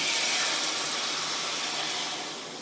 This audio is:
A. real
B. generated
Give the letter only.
A